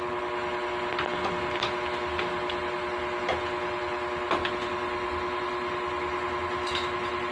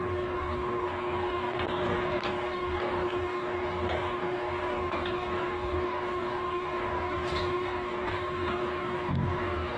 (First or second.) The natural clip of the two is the first